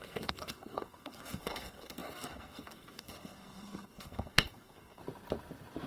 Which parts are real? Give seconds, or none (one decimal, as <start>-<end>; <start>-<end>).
5.0-5.9